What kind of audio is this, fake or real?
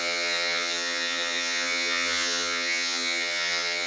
fake